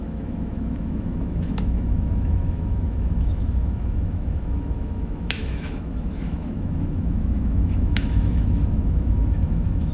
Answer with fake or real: fake